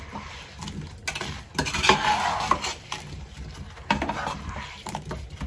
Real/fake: real